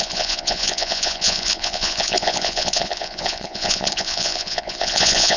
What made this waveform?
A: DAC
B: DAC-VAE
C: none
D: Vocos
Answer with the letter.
D